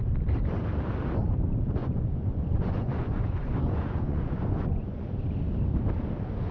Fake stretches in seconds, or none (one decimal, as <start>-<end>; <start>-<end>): 1.8-5.1